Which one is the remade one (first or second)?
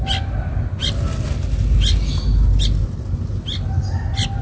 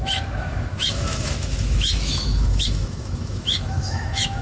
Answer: second